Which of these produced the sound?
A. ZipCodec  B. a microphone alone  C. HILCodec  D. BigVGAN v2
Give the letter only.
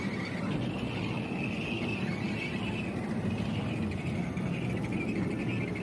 B